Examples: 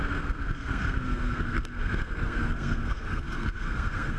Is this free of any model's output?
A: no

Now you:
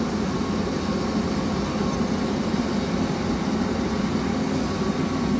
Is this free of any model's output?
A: yes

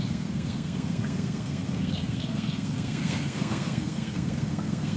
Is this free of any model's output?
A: no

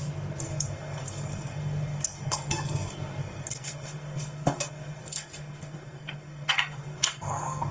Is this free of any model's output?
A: no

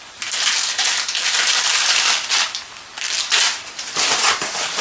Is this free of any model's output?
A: yes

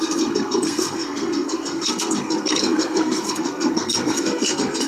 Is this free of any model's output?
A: no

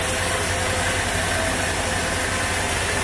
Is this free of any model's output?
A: yes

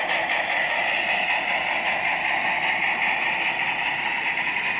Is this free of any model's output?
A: yes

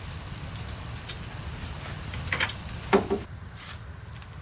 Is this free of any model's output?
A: yes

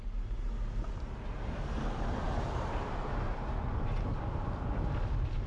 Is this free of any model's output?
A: yes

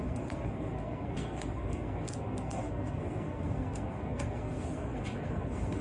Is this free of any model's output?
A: no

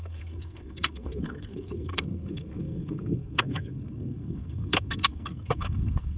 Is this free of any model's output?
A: no